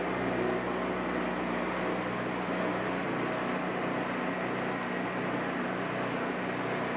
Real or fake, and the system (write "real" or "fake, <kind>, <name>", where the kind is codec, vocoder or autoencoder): real